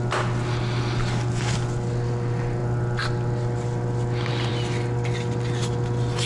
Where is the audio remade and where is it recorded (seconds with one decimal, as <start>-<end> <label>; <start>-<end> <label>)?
0.0-6.3 recorded